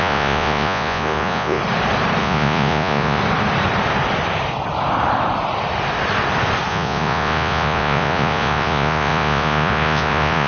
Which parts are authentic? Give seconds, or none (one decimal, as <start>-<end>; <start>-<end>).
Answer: 1.6-2.2; 3.2-6.7